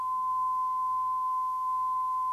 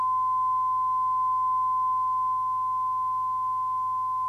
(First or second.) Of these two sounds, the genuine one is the second